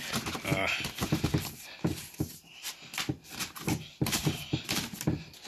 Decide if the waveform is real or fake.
fake